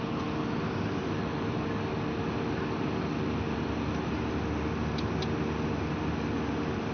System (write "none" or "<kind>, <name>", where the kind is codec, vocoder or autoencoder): none